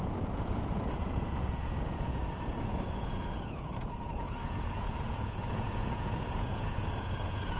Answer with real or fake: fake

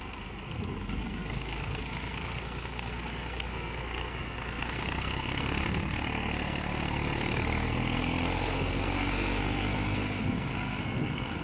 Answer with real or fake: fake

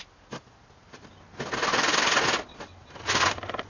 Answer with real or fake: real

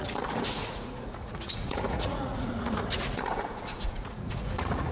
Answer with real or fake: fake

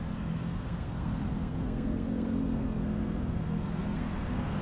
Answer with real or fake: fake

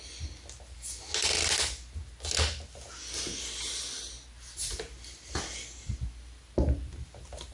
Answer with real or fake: real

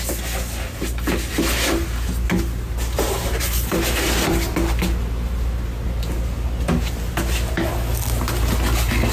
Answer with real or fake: real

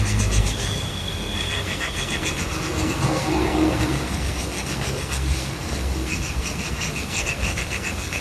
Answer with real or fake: fake